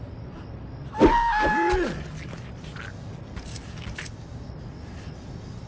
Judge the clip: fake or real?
real